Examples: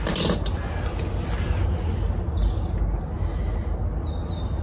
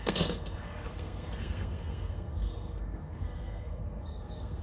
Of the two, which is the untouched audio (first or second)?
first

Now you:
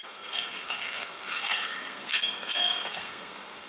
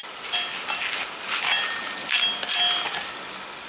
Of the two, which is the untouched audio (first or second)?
second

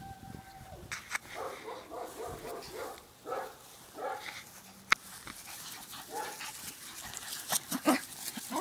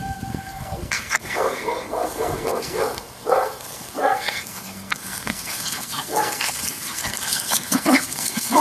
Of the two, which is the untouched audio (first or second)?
first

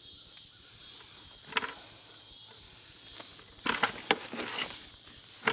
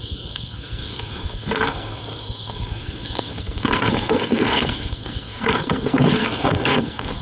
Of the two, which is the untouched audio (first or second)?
first